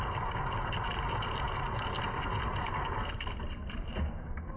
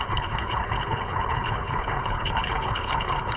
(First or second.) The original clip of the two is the first